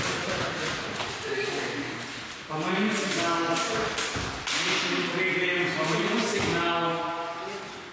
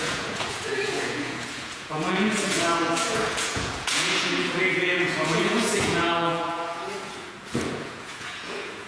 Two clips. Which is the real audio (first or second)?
first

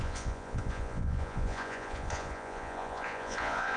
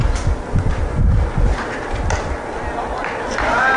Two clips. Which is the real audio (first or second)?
second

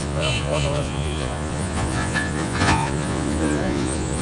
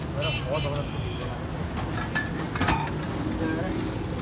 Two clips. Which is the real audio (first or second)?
second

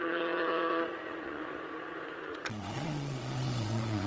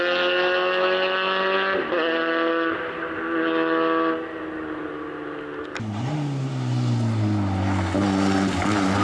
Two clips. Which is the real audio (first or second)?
second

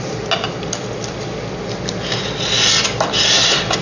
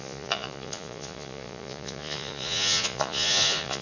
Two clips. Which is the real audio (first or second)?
first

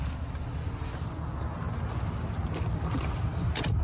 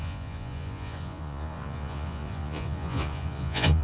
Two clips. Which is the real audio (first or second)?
first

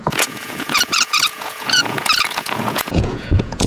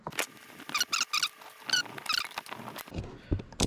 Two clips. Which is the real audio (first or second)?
second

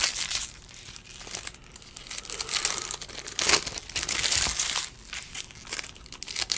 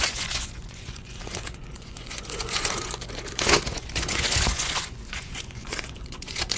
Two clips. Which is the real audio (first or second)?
first